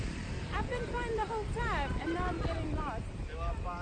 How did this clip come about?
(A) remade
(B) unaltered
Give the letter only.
B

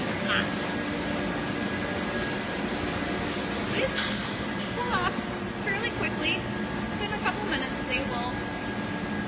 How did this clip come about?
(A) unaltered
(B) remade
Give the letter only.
A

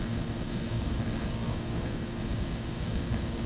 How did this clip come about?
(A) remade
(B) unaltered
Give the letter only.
A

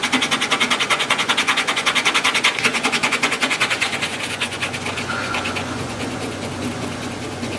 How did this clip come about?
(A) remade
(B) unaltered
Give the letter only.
A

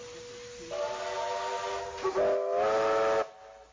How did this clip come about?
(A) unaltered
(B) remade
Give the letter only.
A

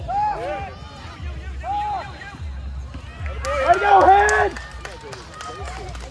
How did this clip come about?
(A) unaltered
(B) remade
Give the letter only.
A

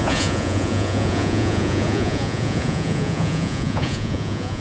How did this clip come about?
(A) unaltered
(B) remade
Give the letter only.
B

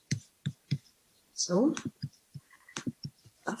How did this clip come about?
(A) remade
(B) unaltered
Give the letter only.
A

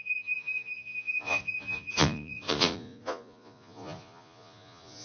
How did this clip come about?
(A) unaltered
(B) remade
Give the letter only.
B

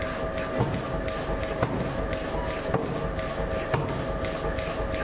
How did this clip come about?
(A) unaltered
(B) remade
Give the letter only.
A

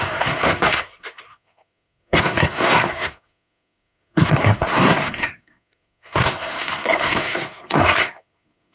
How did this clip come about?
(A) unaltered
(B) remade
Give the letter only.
B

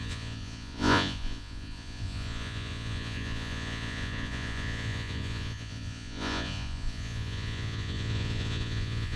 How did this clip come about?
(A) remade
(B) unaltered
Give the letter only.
A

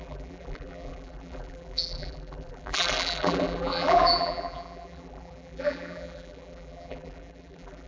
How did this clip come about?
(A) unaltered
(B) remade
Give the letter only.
B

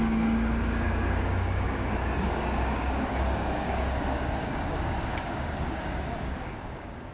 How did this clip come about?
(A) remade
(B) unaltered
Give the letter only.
A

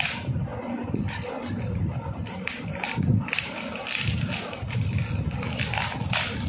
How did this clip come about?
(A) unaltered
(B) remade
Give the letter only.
A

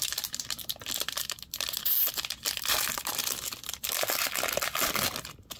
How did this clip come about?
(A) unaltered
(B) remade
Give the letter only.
A